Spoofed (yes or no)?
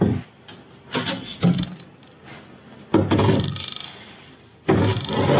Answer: no